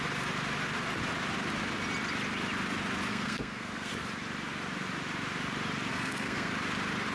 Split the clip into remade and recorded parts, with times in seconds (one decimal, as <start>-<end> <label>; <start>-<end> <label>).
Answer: 0.0-3.1 recorded; 3.1-3.9 remade; 3.9-5.9 recorded; 5.9-6.5 remade; 6.5-7.1 recorded